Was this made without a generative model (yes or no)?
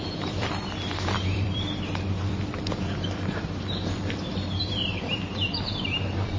no